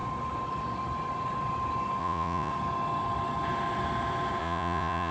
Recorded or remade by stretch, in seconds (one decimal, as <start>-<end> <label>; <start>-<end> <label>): 0.0-2.0 recorded; 2.0-2.5 remade; 2.5-4.4 recorded; 4.4-5.1 remade